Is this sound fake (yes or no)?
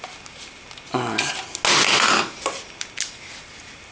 no